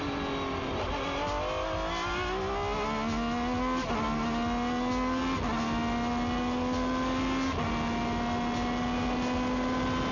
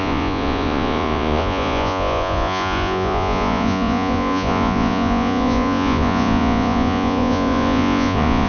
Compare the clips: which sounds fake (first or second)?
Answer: second